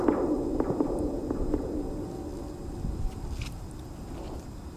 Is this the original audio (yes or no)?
yes